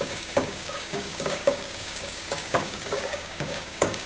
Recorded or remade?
remade